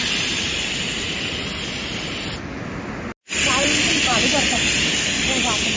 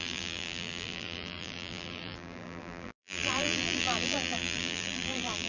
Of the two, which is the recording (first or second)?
first